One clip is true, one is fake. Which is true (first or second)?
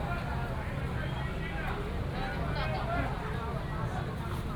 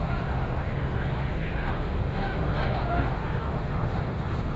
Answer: first